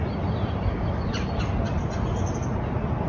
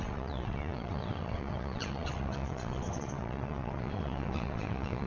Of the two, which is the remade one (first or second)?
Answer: second